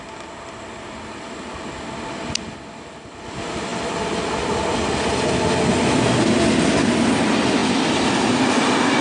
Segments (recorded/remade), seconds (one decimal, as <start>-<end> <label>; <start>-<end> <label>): 0.0-9.0 recorded